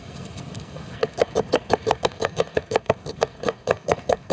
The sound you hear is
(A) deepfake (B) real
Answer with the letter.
A